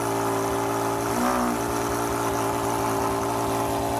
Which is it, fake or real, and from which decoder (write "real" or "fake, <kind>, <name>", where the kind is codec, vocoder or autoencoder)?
real